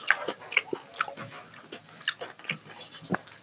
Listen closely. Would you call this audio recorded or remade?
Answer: recorded